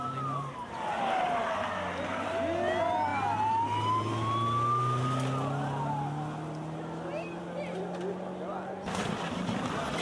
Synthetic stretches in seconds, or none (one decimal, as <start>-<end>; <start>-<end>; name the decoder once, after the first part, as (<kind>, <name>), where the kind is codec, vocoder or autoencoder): none